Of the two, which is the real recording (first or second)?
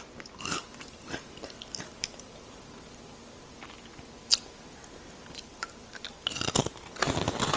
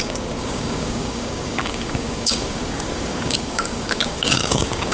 first